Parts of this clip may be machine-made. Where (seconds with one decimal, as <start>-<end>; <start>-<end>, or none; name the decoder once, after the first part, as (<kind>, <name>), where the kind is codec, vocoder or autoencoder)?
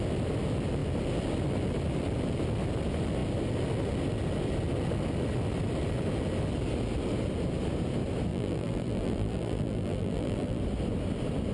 8.3-10.6 (vocoder, BigVGAN v2)